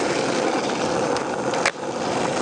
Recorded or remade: recorded